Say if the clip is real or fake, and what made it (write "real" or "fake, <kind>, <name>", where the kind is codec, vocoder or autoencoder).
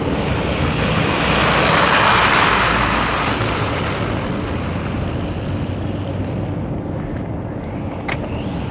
real